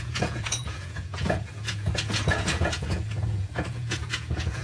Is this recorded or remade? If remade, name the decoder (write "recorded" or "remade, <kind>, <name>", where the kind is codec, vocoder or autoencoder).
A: remade, vocoder, Vocos